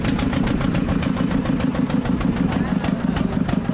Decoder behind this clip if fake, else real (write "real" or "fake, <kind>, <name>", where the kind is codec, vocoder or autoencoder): real